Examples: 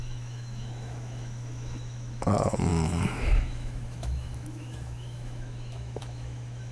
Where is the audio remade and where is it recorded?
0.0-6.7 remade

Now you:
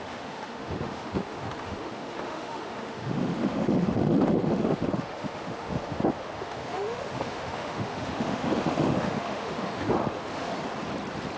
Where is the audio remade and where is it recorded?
0.0-10.5 remade; 10.5-11.4 recorded

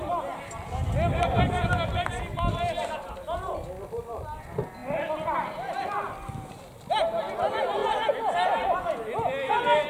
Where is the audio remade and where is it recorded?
0.0-9.9 recorded